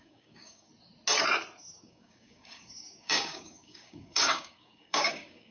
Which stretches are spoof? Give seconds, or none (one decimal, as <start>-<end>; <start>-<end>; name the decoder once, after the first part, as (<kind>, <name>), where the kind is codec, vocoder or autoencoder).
0.0-0.7 (codec, DAC); 1.6-5.5